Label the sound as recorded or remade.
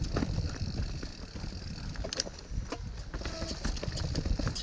recorded